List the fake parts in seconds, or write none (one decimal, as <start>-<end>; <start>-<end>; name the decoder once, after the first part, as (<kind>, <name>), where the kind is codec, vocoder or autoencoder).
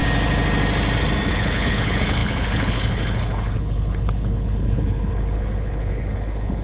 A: 1.3-6.6 (codec, HILCodec)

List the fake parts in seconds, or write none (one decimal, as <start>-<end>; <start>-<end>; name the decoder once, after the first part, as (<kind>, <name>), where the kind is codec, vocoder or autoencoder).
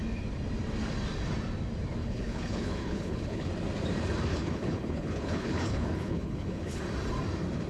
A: 2.0-3.5 (codec, HILCodec); 4.3-6.8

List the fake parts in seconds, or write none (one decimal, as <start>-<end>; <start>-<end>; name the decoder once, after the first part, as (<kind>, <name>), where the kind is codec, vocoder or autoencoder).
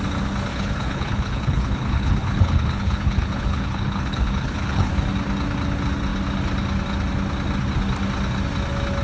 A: 0.5-4.9 (codec, HILCodec)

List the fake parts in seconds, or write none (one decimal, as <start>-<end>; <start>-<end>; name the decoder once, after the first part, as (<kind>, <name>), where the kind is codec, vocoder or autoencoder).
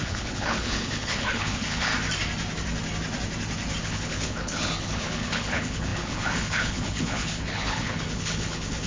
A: 0.0-1.9 (codec, HILCodec); 3.8-8.9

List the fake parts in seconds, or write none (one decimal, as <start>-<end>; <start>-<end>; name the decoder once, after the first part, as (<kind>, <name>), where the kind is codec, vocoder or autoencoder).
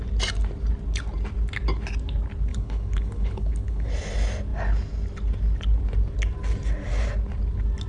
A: 2.5-3.9 (codec, HILCodec)